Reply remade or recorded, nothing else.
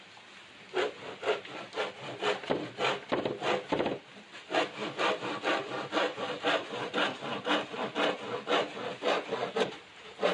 recorded